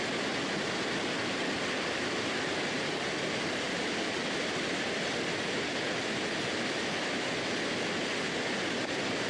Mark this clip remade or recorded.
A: recorded